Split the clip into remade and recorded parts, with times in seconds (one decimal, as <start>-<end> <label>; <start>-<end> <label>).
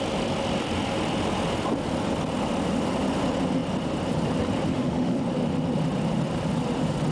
0.0-4.7 recorded; 4.7-5.2 remade; 5.2-7.1 recorded